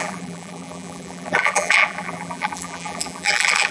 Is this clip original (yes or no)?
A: no